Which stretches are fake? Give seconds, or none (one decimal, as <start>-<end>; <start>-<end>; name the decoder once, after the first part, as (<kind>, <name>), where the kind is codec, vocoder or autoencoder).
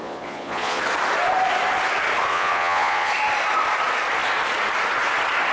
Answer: 0.0-0.8 (vocoder, Vocos); 2.3-3.1